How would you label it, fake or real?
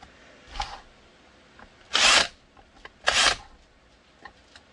real